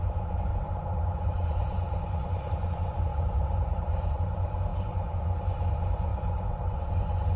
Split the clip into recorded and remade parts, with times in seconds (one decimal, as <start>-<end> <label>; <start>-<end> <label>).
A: 0.0-7.4 remade